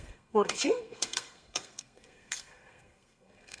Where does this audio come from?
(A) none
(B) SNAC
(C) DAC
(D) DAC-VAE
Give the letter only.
B